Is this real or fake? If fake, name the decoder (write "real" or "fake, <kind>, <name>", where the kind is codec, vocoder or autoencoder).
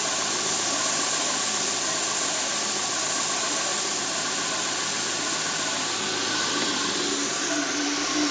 real